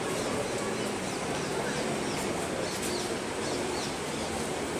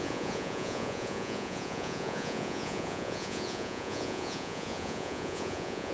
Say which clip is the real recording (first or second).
first